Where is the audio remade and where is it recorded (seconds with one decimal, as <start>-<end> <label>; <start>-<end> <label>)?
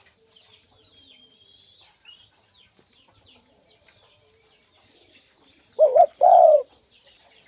0.0-5.9 recorded; 5.9-7.5 remade